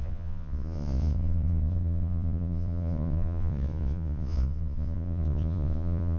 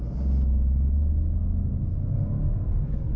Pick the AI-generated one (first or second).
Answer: first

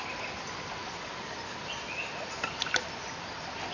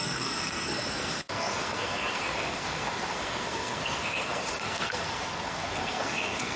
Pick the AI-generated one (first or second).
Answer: second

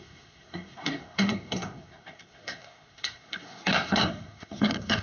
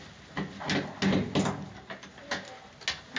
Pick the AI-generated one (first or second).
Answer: first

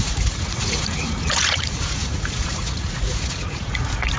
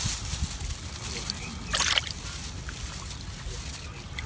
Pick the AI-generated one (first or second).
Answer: first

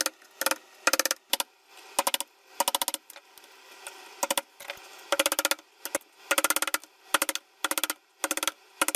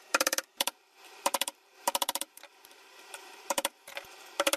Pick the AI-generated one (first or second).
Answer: second